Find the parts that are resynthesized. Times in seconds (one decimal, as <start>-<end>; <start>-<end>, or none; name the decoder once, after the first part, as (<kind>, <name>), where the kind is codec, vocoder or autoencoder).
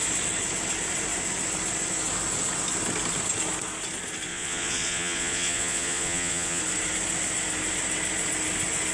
4.3-6.6 (vocoder, Vocos)